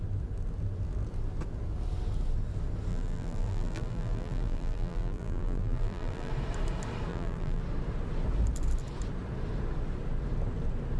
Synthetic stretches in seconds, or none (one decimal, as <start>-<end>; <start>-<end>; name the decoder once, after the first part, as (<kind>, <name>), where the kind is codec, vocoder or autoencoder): 2.9-6.3 (vocoder, BigVGAN v2); 7.1-7.6